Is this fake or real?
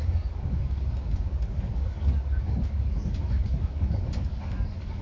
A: fake